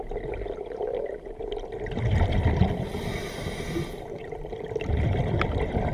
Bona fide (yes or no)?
yes